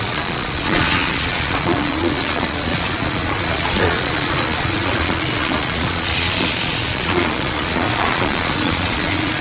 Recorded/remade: remade